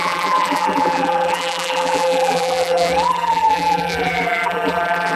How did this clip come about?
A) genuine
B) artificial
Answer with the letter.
B